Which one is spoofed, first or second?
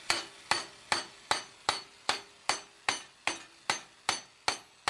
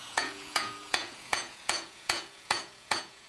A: second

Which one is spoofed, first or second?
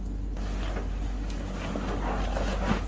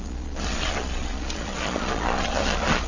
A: second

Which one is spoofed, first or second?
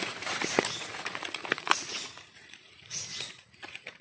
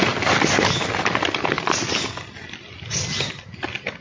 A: first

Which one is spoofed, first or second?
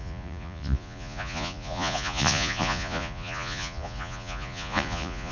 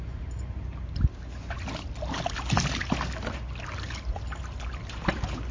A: first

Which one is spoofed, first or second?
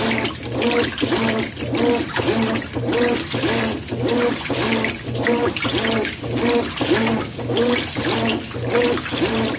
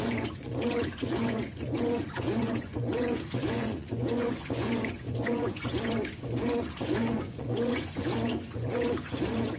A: second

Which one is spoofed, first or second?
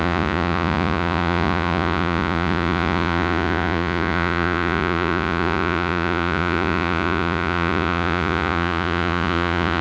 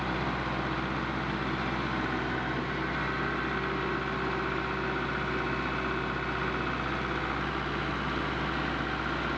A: first